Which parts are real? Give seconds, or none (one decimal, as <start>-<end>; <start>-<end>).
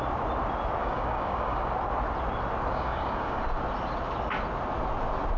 0.0-0.8; 1.7-2.7; 3.4-5.4